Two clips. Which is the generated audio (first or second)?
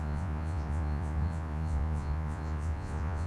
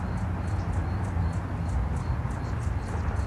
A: first